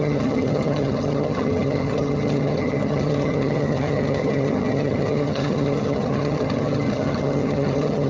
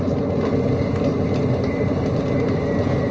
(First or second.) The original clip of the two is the second